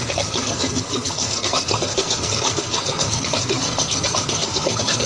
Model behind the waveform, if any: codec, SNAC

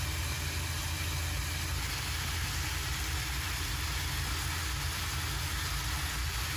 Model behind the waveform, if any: none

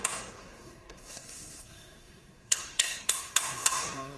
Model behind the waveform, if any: codec, SNAC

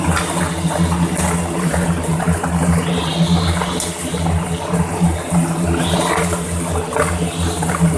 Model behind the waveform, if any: none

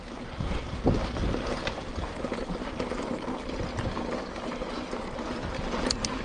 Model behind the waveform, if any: none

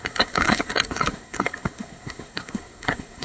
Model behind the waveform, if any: codec, SNAC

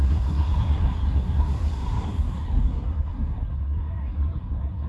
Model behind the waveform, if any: codec, SNAC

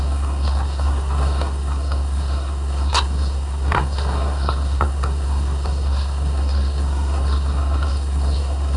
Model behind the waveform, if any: codec, SNAC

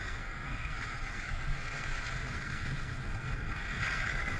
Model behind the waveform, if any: codec, SNAC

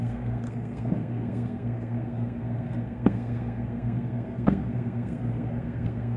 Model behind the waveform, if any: codec, SNAC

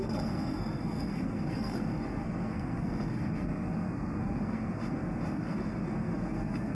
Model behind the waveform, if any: codec, SNAC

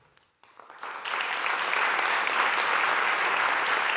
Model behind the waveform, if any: none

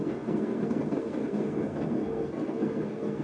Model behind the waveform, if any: codec, SNAC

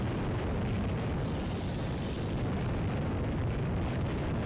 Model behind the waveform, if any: none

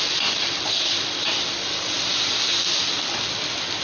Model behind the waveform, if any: none